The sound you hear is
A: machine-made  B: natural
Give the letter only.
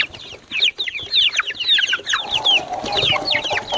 B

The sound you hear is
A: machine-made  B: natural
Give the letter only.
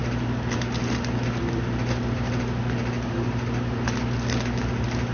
B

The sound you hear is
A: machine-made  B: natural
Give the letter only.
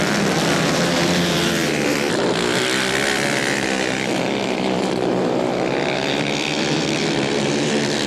A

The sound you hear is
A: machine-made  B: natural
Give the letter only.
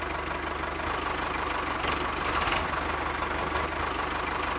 B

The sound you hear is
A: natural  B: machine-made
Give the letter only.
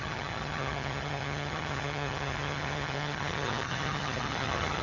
B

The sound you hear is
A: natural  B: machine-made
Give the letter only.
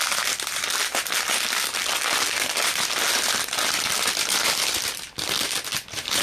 A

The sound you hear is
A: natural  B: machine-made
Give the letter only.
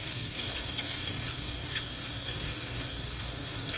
B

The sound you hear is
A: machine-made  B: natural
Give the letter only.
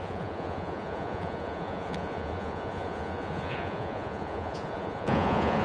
A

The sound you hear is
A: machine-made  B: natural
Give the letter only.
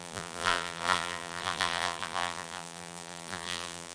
A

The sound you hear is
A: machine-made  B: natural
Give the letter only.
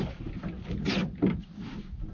B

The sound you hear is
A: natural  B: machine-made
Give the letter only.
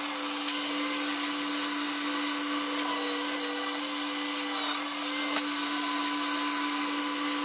A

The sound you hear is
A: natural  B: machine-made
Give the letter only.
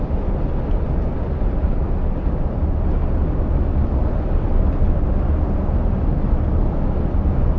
A